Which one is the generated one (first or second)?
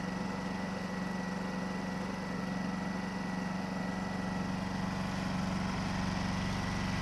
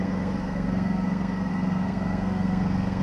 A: second